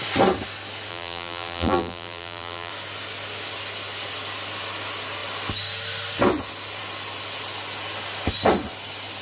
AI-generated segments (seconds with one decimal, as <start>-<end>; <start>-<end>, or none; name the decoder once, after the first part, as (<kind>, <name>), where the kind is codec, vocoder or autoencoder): 0.9-2.7 (vocoder, BigVGAN v2)

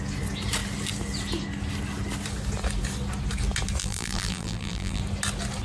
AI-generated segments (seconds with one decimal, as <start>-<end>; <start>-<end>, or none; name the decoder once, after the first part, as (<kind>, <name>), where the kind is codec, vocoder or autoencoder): 3.8-5.0 (vocoder, BigVGAN v2)

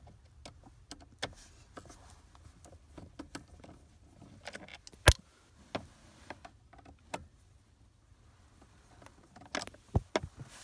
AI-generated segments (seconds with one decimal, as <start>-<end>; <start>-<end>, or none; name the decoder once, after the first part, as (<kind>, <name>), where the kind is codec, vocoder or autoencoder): none

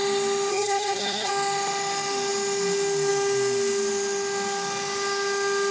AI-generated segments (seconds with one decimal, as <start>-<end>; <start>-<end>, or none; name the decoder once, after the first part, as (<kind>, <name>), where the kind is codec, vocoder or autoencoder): 0.5-1.3 (codec, SNAC)

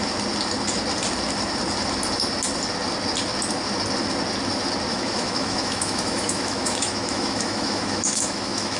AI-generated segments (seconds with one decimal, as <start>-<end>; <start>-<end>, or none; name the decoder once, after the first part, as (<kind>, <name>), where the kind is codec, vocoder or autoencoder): 4.9-8.8 (autoencoder, DAC-VAE)

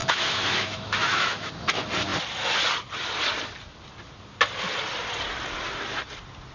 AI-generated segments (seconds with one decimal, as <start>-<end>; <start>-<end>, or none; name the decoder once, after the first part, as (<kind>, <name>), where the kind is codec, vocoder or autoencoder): 0.0-1.5 (autoencoder, DAC-VAE)

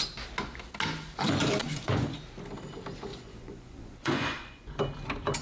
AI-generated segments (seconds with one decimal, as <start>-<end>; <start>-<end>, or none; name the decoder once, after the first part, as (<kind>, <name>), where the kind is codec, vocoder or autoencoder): 1.6-2.2 (vocoder, Vocos); 3.1-4.8